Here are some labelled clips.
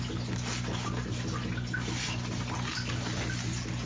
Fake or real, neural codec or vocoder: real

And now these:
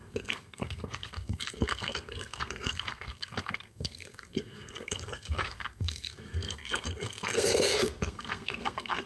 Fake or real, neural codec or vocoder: fake, codec, SNAC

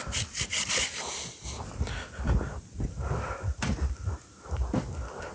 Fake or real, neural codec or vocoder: real